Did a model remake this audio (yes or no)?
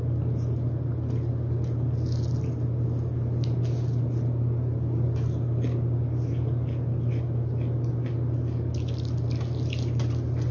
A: no